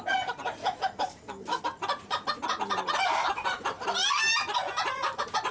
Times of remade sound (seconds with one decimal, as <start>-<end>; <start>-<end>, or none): 0.6-1.6